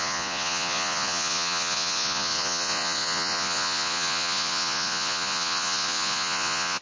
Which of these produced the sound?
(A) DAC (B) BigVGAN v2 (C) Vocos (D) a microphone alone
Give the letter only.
C